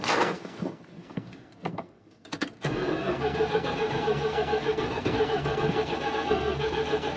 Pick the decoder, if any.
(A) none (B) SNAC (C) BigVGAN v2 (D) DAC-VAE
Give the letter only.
B